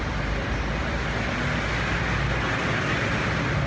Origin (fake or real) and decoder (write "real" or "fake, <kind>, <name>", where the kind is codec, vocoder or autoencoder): real